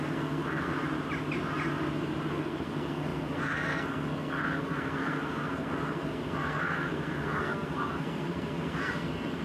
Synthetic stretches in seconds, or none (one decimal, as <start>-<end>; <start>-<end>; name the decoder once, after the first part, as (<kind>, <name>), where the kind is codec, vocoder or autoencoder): 0.0-0.8 (codec, SNAC); 2.3-9.4